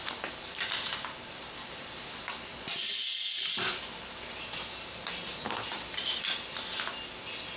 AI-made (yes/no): no